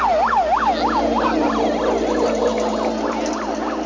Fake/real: real